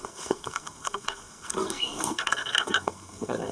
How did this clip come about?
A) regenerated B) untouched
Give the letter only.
A